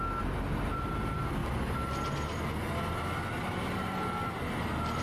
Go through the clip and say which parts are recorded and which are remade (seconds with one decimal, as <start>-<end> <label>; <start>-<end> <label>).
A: 0.0-5.0 recorded

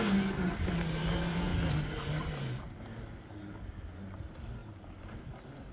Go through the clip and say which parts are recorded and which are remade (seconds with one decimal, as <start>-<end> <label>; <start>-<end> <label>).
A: 0.0-5.7 recorded

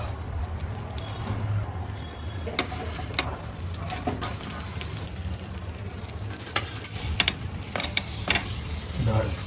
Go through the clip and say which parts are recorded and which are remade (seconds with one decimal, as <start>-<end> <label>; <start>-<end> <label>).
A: 0.0-9.5 recorded

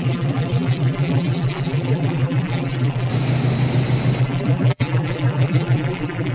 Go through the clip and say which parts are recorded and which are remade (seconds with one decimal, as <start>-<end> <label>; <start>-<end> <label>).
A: 0.0-3.1 remade; 3.1-4.2 recorded; 4.2-6.3 remade

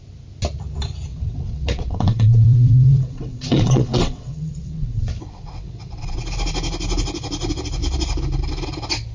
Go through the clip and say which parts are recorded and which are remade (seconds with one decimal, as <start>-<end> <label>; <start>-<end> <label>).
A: 0.0-1.1 recorded; 1.1-6.2 remade; 6.2-9.1 recorded